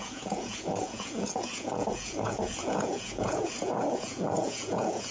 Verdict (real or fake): fake